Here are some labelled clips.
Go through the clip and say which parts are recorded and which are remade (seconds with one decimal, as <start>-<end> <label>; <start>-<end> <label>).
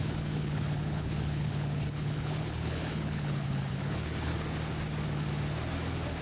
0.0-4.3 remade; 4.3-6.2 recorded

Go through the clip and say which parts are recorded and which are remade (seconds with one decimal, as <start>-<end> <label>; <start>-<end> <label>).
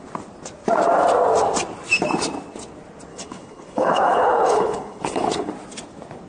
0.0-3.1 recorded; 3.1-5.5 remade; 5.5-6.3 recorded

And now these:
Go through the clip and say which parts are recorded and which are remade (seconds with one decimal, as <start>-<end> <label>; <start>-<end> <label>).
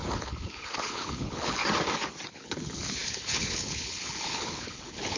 0.0-1.6 remade; 1.6-2.3 recorded; 2.3-5.2 remade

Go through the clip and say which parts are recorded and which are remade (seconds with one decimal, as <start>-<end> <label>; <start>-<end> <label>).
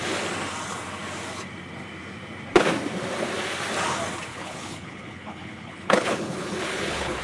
0.0-4.3 recorded; 4.3-7.2 remade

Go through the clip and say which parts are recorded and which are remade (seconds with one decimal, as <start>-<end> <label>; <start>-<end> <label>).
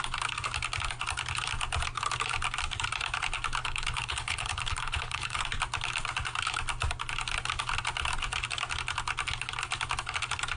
0.0-3.6 recorded; 3.6-5.4 remade; 5.4-10.6 recorded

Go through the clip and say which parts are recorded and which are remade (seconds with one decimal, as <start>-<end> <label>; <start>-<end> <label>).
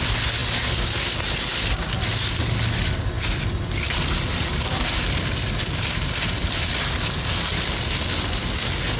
0.0-9.0 recorded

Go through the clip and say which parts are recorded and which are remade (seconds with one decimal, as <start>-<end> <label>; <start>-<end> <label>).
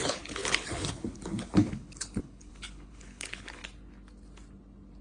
0.0-3.6 remade; 3.6-5.0 recorded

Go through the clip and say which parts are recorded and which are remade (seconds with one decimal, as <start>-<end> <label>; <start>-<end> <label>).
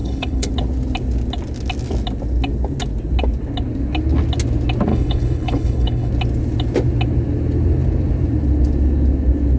0.0-0.5 remade; 0.5-4.9 recorded; 4.9-6.1 remade; 6.1-9.6 recorded